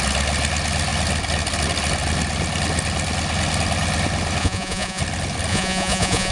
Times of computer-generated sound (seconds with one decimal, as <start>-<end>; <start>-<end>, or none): 4.4-5.0; 5.5-6.3